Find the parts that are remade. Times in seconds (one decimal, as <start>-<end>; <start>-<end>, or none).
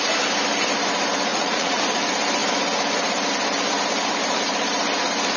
1.3-1.8